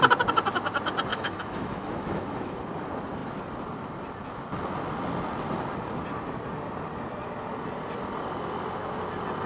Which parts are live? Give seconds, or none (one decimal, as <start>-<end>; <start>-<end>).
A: 0.0-1.1; 2.6-9.5